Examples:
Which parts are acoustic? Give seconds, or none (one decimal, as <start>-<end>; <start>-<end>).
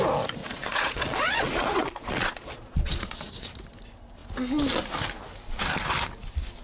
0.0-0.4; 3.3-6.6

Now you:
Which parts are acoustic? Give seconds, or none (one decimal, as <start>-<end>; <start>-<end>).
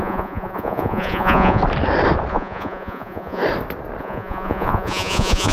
1.6-2.3; 3.4-4.0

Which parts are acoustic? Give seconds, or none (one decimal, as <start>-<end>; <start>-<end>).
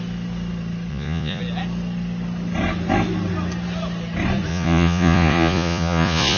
0.0-0.9; 1.4-4.5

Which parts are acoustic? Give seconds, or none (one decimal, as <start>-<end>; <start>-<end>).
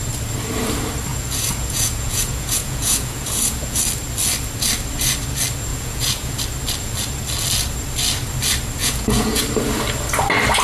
0.0-1.1; 3.8-5.7; 6.4-8.8; 9.4-10.6